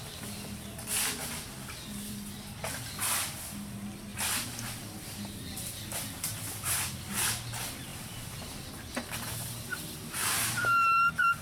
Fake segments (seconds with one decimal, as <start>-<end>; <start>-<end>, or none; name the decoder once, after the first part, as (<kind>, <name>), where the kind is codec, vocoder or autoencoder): 7.9-8.4 (vocoder, BigVGAN v2)